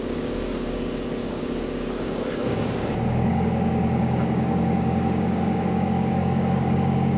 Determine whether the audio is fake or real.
fake